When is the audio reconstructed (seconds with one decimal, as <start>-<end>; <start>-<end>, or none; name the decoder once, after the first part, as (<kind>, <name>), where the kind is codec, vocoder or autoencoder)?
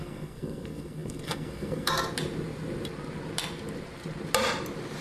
0.0-1.9 (codec, SNAC)